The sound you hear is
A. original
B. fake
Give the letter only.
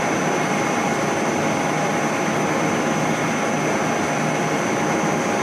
A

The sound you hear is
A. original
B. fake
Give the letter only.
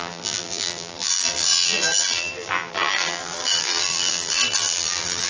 B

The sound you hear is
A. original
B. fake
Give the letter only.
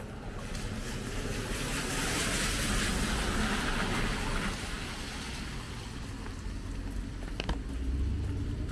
A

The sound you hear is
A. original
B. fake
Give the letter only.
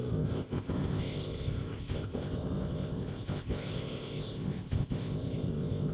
B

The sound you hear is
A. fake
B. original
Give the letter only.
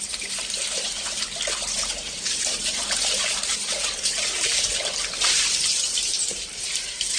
A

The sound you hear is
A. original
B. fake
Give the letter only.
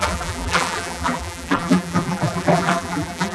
B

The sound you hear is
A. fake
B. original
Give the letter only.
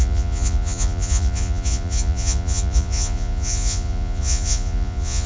A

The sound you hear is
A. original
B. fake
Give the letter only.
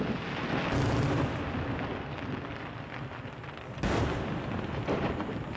A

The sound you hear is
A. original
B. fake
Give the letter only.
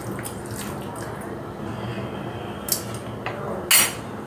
A